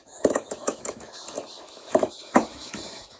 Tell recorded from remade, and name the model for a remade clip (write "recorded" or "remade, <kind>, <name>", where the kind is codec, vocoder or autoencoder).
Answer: remade, autoencoder, DAC-VAE